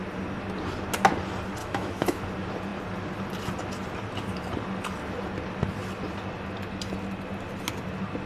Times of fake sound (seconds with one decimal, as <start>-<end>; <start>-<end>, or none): 1.6-2.2